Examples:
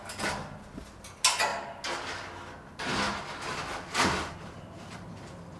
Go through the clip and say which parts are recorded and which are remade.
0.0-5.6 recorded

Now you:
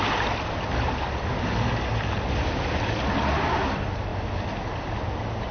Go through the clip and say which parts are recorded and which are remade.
0.0-5.5 recorded